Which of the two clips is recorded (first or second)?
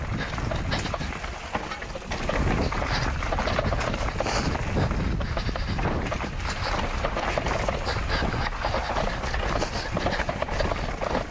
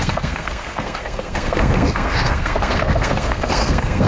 first